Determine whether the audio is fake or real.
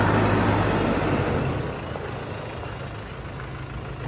real